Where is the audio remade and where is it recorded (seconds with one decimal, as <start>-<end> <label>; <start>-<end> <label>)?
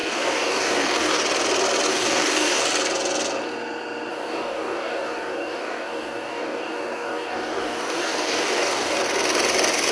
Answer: 0.0-1.2 remade; 1.2-1.9 recorded; 1.9-2.6 remade; 2.6-4.1 recorded; 4.1-9.0 remade; 9.0-9.9 recorded